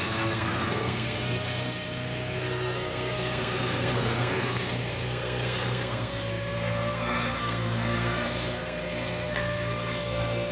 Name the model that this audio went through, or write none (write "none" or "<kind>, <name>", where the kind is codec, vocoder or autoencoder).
codec, SNAC